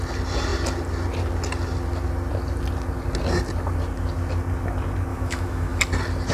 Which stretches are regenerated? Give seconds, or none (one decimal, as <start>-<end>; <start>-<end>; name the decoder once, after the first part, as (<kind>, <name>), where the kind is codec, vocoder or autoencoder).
5.1-5.8 (autoencoder, DAC-VAE)